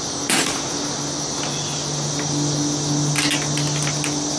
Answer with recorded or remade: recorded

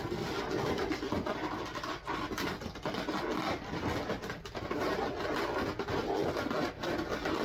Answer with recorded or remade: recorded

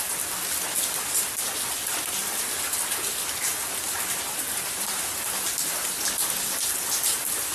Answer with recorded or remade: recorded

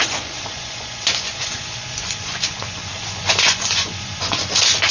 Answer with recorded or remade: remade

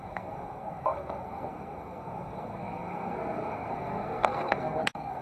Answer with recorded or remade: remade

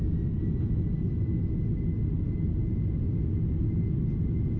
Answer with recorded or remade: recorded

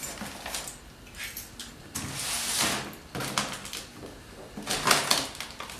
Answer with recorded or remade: recorded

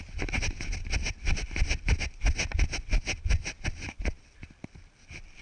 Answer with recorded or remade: recorded